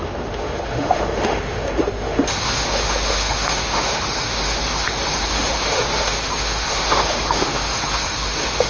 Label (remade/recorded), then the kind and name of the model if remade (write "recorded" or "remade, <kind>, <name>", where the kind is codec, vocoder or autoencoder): remade, autoencoder, DAC-VAE